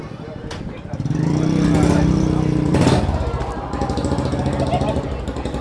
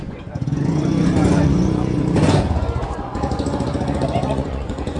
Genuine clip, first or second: first